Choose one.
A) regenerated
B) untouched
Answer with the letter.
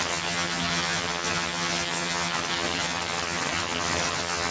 A